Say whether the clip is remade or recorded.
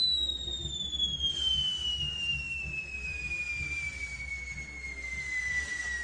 recorded